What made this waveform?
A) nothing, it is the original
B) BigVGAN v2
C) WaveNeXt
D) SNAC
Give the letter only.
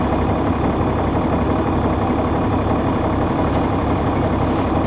A